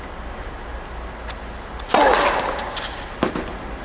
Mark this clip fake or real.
real